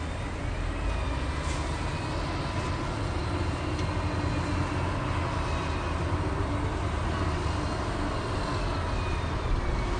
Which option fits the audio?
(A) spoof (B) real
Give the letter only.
B